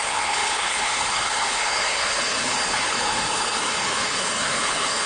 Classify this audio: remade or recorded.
remade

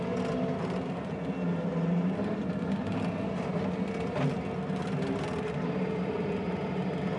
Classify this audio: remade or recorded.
recorded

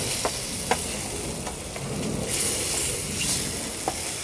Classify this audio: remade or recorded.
recorded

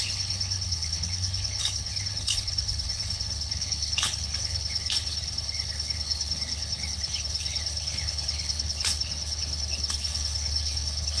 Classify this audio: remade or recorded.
remade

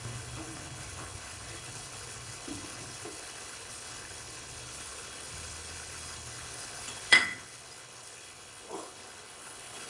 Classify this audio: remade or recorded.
remade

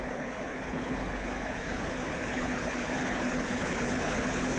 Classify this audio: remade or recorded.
remade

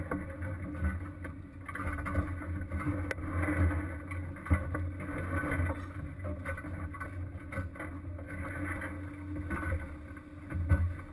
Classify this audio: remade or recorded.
recorded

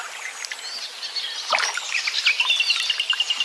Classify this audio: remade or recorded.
recorded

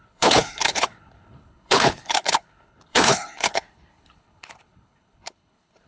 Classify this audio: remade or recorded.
remade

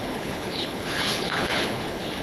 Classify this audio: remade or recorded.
remade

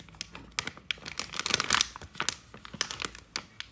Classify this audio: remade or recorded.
recorded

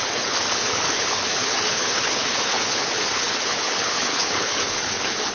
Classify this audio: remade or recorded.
remade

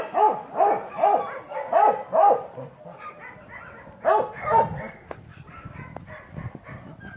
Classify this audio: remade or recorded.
recorded